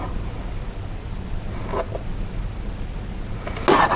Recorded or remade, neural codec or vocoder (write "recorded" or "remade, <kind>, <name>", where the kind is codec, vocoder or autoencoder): recorded